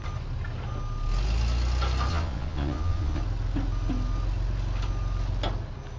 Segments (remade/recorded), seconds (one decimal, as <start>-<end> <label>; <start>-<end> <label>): 0.0-2.1 recorded; 2.1-3.2 remade; 3.2-6.0 recorded